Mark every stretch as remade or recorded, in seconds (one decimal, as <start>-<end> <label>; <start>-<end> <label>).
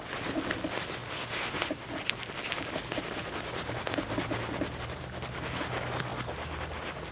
0.0-7.1 recorded